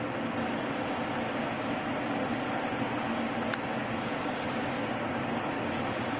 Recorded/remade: recorded